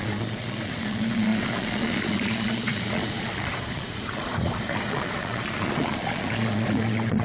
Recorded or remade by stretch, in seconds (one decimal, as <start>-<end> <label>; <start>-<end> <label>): 0.0-7.2 remade